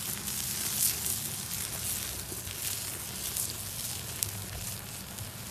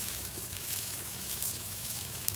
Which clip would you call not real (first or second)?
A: second